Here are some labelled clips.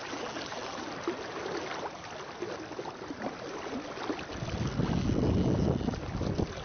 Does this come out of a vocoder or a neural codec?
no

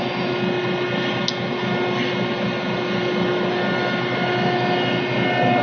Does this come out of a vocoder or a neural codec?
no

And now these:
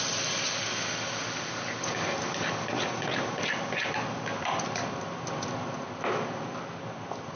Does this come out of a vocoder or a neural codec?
no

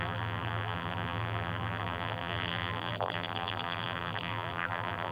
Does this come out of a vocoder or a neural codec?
yes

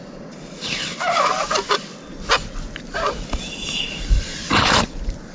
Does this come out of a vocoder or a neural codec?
no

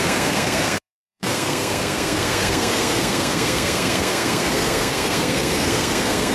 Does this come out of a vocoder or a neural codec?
yes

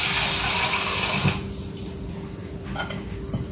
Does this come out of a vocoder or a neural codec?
no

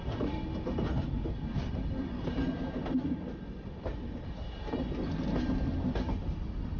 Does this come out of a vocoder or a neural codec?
no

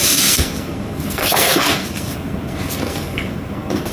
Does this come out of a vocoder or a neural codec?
yes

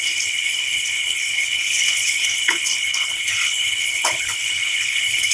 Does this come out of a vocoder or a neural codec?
yes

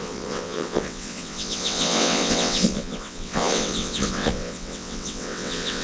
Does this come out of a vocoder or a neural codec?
yes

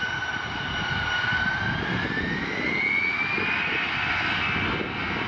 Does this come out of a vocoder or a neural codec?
no